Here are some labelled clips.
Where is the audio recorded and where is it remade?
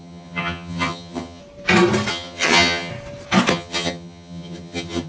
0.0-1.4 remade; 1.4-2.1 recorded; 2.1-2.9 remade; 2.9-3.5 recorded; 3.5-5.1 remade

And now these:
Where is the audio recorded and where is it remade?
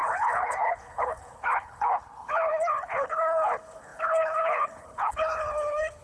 0.0-6.0 remade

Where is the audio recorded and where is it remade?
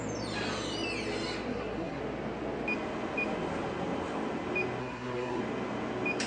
0.0-1.5 recorded; 1.5-2.0 remade; 2.0-4.8 recorded; 4.8-5.4 remade; 5.4-6.3 recorded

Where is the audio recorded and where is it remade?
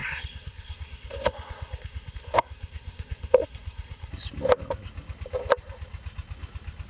0.0-4.1 remade; 4.1-6.9 recorded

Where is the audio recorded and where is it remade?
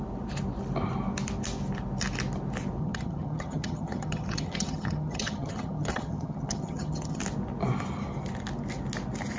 0.0-2.8 recorded; 2.8-7.2 remade; 7.2-9.4 recorded